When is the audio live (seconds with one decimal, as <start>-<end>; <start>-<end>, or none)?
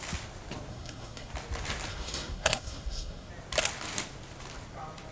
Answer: 0.0-0.7; 1.3-1.9; 3.3-5.1